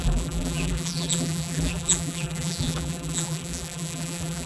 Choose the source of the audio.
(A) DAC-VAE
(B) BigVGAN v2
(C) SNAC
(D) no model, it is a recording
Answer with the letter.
B